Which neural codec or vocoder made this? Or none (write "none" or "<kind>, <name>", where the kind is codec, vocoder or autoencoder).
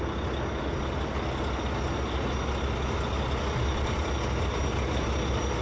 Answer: none